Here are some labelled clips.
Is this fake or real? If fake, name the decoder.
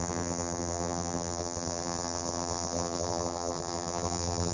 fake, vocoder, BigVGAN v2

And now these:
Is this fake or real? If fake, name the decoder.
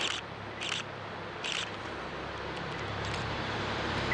fake, vocoder, BigVGAN v2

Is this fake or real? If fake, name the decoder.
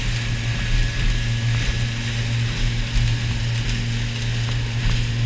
real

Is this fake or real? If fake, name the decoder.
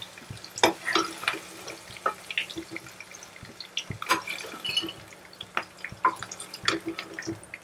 real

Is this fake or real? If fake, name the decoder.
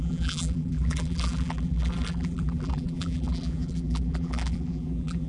fake, vocoder, BigVGAN v2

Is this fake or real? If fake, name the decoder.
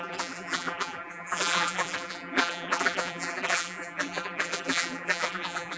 fake, vocoder, BigVGAN v2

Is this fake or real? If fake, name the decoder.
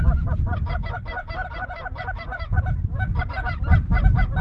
fake, vocoder, BigVGAN v2